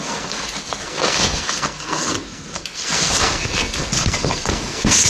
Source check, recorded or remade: remade